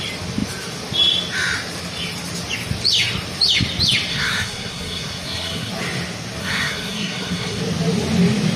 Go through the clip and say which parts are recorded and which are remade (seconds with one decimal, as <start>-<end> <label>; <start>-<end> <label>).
0.0-4.1 recorded; 4.1-5.7 remade; 5.7-6.4 recorded; 6.4-7.6 remade; 7.6-8.6 recorded